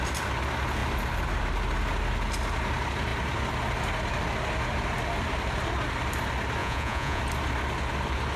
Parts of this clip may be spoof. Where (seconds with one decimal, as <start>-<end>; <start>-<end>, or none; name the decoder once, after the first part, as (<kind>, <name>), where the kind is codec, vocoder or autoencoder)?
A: 6.6-7.2 (vocoder, Vocos)

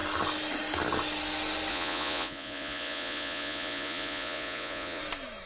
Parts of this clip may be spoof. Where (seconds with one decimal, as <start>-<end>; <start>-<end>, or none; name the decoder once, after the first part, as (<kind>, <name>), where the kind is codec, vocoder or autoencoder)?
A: 1.7-5.0 (vocoder, Vocos)